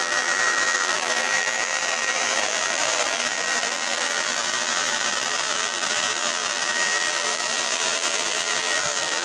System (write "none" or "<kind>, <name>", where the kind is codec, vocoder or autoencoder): vocoder, BigVGAN v2